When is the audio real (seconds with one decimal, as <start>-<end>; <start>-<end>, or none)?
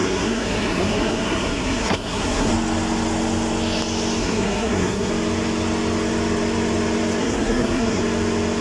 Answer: 2.5-4.2; 5.1-7.2; 8.0-8.6